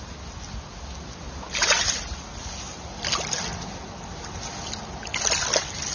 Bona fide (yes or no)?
yes